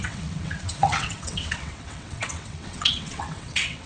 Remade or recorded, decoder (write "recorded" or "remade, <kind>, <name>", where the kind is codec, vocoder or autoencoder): remade, vocoder, WaveNeXt